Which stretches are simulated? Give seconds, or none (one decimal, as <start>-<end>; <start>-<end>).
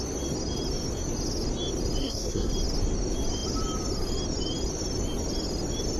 2.0-2.5